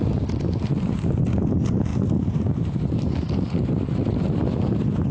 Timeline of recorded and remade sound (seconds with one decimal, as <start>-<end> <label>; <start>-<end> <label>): 0.0-5.1 recorded